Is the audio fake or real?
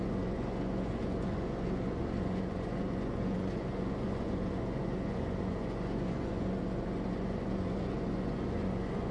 fake